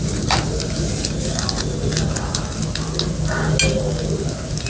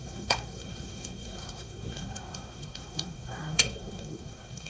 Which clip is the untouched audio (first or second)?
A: first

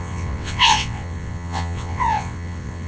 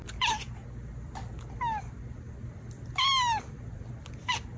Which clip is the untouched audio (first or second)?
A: second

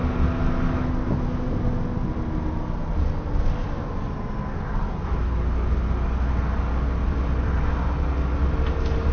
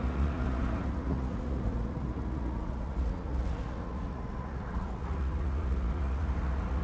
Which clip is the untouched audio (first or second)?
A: first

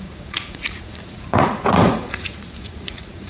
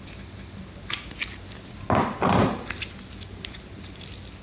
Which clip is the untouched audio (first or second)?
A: second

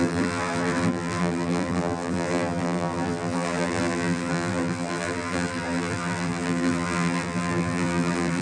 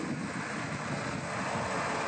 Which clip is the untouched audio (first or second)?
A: second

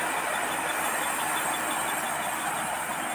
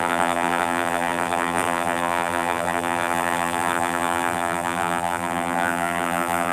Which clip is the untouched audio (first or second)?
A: first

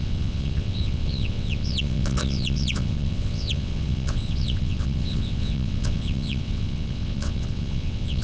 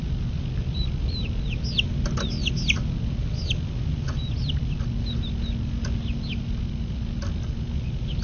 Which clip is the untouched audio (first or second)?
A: second